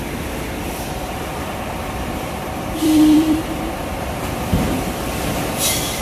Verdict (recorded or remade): remade